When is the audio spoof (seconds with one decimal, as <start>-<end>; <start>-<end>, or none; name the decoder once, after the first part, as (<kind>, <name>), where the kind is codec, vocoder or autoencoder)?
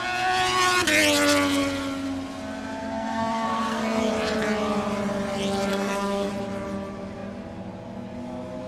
2.8-4.1 (codec, SNAC); 5.7-6.3